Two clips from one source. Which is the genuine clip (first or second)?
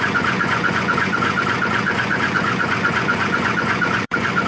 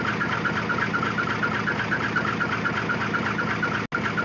second